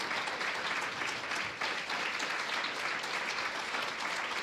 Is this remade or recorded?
recorded